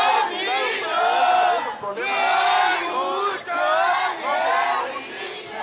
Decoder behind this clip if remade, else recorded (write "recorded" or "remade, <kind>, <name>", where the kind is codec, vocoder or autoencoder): recorded